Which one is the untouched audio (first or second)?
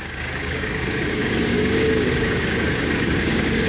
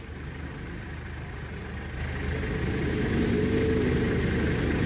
second